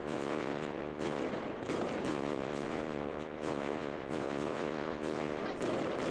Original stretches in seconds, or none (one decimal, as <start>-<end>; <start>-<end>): 1.2-2.1; 5.4-6.1